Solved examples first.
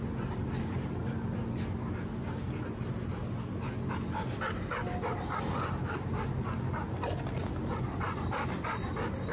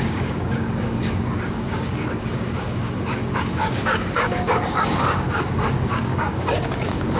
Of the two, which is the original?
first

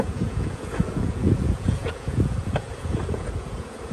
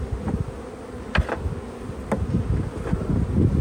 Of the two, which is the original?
second